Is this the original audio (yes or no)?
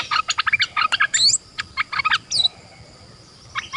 yes